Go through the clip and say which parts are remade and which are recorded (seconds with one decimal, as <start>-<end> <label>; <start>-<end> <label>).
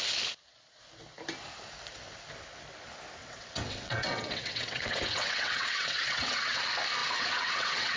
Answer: 0.0-3.2 recorded; 3.2-6.6 remade; 6.6-7.0 recorded; 7.0-8.0 remade